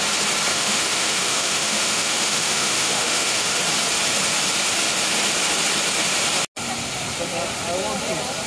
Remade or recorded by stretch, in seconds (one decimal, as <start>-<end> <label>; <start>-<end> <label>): 0.0-0.5 recorded; 0.5-3.6 remade; 3.6-8.5 recorded